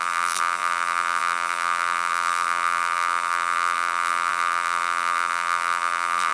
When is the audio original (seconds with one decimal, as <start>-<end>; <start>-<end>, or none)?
none